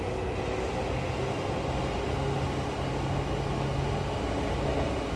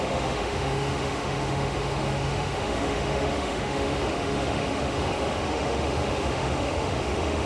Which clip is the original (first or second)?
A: first